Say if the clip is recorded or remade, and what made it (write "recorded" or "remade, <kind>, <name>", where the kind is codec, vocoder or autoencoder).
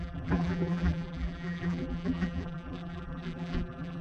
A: remade, vocoder, BigVGAN v2